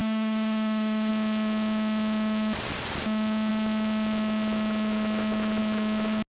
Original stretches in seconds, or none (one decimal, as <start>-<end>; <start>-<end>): 1.1-6.3